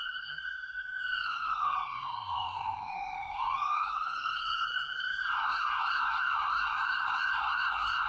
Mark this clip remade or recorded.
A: remade